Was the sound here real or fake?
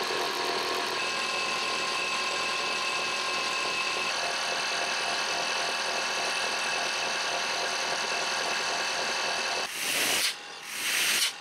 real